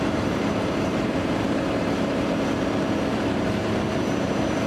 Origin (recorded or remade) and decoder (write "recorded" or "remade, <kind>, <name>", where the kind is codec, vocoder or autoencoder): remade, vocoder, BigVGAN v2